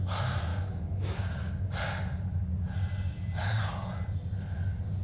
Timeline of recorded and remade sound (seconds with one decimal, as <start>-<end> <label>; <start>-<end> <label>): 0.0-0.5 recorded; 0.5-1.5 remade; 1.5-5.0 recorded

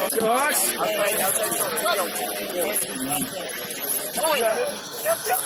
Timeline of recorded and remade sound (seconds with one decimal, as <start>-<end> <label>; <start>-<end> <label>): 0.0-4.5 recorded; 4.5-5.5 remade

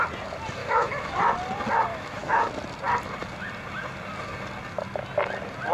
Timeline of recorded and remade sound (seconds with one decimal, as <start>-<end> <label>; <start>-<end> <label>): 0.0-0.6 recorded; 0.6-1.2 remade; 1.2-1.9 recorded; 1.9-2.5 remade; 2.5-5.7 recorded

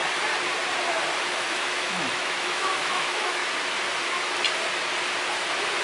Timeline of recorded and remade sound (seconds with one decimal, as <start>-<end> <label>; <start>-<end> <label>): 0.0-1.3 recorded; 1.3-3.4 remade; 3.4-5.8 recorded

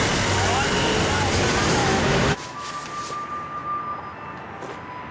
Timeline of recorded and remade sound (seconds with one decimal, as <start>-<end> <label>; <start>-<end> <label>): 0.0-1.8 recorded; 1.8-2.7 remade; 2.7-5.1 recorded

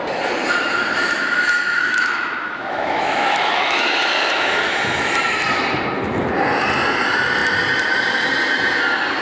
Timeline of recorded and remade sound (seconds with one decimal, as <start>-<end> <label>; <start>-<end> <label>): 0.0-1.0 recorded; 1.0-5.1 remade; 5.1-9.2 recorded

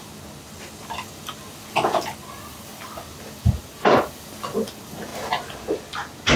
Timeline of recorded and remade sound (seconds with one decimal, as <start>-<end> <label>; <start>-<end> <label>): 0.0-6.4 recorded

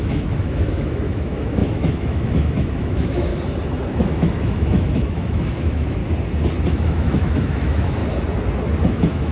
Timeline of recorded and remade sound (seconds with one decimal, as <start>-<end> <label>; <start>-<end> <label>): 0.0-3.3 remade; 3.3-3.9 recorded; 3.9-6.0 remade; 6.0-6.7 recorded; 6.7-8.0 remade; 8.0-8.9 recorded; 8.9-9.3 remade